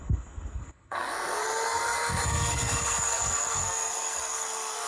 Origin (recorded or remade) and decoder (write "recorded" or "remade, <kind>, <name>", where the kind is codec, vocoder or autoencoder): remade, codec, SNAC